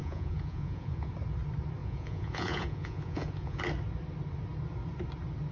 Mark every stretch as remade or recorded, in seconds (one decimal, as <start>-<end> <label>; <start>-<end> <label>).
0.0-1.1 remade; 1.1-1.8 recorded; 1.8-3.6 remade; 3.6-5.5 recorded